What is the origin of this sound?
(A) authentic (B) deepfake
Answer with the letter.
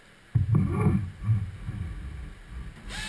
A